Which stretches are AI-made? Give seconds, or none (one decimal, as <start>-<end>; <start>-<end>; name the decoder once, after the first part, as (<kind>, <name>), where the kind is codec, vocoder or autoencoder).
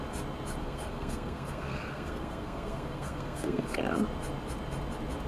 0.6-3.8 (codec, SNAC)